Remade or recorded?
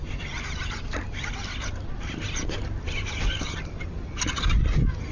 recorded